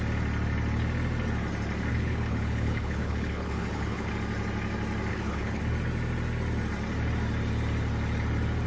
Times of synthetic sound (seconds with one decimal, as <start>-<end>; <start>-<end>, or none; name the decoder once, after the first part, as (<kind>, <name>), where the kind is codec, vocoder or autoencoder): 1.9-4.1 (codec, HILCodec); 5.1-5.6